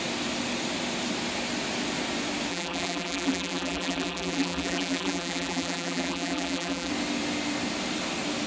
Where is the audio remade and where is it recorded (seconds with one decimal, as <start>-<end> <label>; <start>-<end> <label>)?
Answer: 0.0-2.5 recorded; 2.5-6.9 remade; 6.9-8.5 recorded